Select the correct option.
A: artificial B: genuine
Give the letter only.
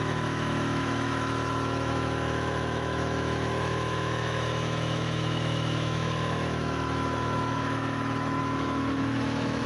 A